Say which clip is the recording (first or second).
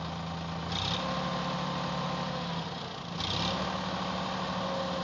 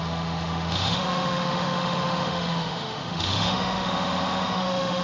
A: first